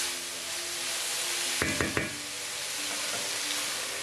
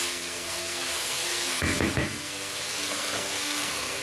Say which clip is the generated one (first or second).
second